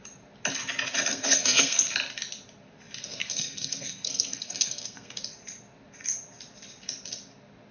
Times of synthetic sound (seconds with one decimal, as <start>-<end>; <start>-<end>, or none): 1.1-1.8; 3.0-5.2